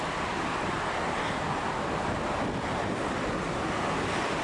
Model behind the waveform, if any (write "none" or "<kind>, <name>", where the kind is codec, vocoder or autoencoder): none